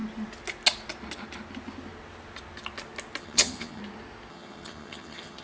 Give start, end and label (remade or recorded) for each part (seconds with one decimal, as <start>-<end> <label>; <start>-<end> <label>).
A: 0.0-3.2 recorded; 3.2-3.8 remade; 3.8-4.3 recorded; 4.3-5.4 remade

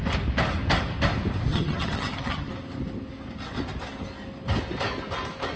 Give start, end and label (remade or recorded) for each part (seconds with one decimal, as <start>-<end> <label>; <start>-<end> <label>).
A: 0.0-1.5 recorded; 1.5-2.5 remade; 2.5-5.6 recorded

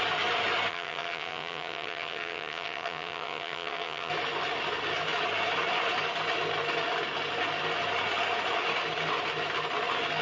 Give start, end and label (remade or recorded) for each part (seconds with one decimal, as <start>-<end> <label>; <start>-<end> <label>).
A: 0.0-0.7 recorded; 0.7-4.1 remade; 4.1-10.2 recorded

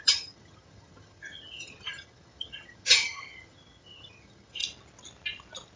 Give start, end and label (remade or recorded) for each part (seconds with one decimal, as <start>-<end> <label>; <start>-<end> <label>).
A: 0.0-4.6 remade; 4.6-5.8 recorded

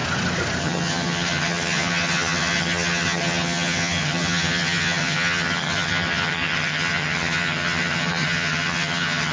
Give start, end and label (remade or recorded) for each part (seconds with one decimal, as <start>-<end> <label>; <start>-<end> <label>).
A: 0.0-0.6 recorded; 0.6-9.3 remade

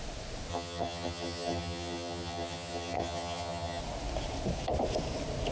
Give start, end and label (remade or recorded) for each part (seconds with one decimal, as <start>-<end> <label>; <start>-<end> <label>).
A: 0.0-0.5 recorded; 0.5-3.8 remade; 3.8-5.5 recorded

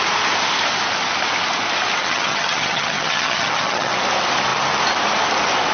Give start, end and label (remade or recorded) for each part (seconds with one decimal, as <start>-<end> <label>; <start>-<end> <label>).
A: 0.0-2.0 recorded; 2.0-3.9 remade; 3.9-5.7 recorded